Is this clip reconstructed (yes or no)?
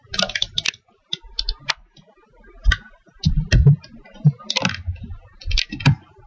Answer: no